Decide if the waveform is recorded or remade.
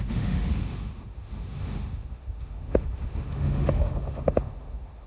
remade